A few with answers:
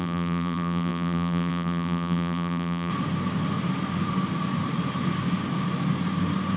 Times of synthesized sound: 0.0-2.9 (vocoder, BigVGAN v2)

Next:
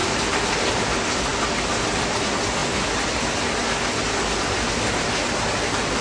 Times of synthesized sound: 0.0-1.3 (vocoder, BigVGAN v2); 1.8-6.0

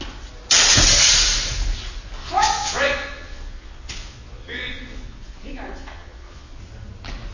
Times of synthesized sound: 2.2-6.6 (vocoder, Vocos)

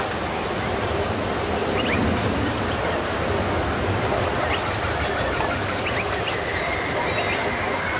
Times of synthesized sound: none

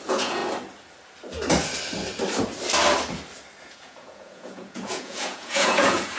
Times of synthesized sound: 0.0-0.4 (vocoder, Vocos); 3.6-6.2

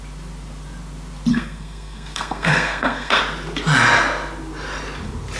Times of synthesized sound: 1.3-3.2 (codec, SNAC)